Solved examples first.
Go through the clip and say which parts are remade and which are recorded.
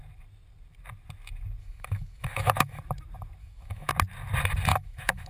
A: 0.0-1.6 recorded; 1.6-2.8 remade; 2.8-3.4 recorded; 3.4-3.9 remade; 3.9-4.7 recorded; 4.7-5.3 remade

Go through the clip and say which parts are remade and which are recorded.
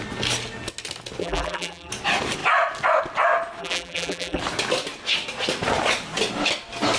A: 0.0-1.2 recorded; 1.2-1.9 remade; 1.9-3.6 recorded; 3.6-4.4 remade; 4.4-7.0 recorded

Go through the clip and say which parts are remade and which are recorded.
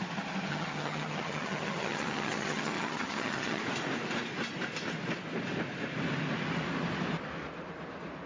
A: 0.0-0.5 recorded; 0.5-3.6 remade; 3.6-8.3 recorded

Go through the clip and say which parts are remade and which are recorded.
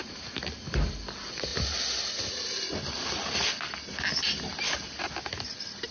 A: 0.0-5.9 recorded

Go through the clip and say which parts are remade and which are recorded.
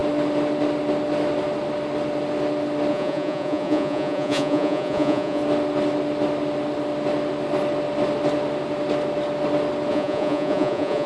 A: 0.0-2.9 recorded; 2.9-5.4 remade; 5.4-9.9 recorded; 9.9-11.1 remade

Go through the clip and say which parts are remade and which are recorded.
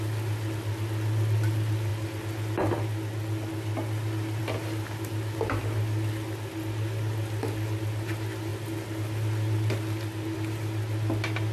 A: 0.0-11.5 recorded